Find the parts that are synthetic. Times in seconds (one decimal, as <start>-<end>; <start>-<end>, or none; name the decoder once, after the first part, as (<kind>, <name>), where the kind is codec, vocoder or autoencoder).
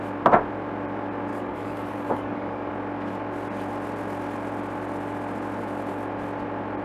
1.3-2.7 (codec, DAC)